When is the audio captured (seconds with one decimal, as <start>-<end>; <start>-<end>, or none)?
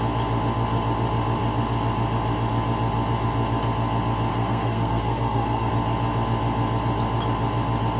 0.0-4.3; 5.7-8.0